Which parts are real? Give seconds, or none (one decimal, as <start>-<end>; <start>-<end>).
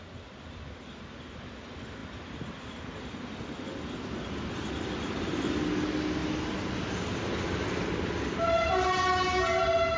0.0-10.0